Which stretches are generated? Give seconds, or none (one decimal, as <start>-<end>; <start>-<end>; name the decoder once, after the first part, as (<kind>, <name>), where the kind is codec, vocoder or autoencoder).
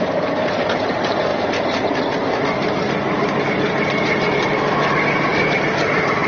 none